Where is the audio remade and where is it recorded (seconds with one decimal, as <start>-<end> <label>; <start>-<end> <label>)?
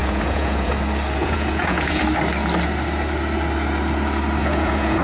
0.0-0.7 remade; 0.7-1.2 recorded; 1.2-2.0 remade; 2.0-4.4 recorded; 4.4-5.0 remade